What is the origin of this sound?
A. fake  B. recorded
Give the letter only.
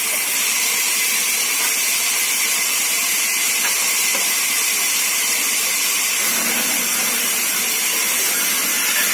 B